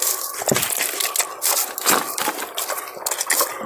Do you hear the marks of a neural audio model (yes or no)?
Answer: no